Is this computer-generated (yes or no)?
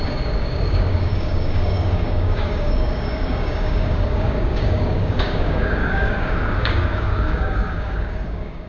yes